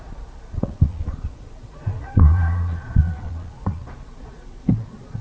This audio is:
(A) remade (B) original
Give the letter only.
A